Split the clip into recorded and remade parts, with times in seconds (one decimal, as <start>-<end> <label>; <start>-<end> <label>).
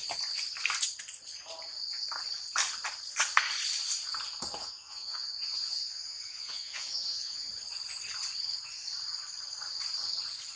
0.0-4.6 recorded; 4.6-7.5 remade; 7.5-10.6 recorded